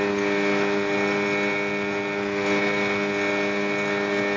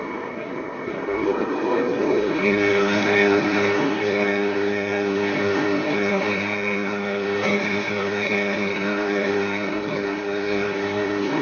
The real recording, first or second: first